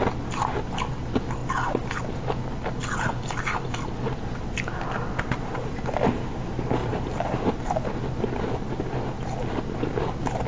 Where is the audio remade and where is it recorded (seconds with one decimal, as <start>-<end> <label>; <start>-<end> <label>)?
0.0-6.8 recorded; 6.8-7.5 remade; 7.5-10.5 recorded

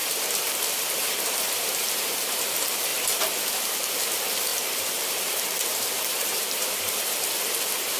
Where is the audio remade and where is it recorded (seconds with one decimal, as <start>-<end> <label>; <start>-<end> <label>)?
0.0-2.9 remade; 2.9-4.1 recorded; 4.1-8.0 remade

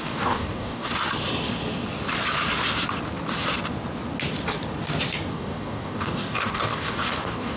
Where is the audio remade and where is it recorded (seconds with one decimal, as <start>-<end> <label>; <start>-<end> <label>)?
0.0-0.9 remade; 0.9-5.3 recorded; 5.3-7.6 remade

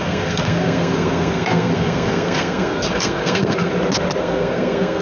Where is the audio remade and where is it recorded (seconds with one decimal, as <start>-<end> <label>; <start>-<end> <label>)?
0.0-3.7 remade; 3.7-4.2 recorded; 4.2-5.0 remade

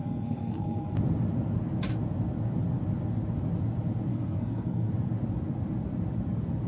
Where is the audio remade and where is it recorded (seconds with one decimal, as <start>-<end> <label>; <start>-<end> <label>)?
0.0-0.9 remade; 0.9-4.1 recorded; 4.1-4.9 remade; 4.9-6.7 recorded